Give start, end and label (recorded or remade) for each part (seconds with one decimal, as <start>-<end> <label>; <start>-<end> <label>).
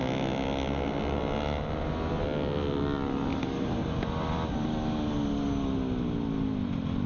0.0-7.1 recorded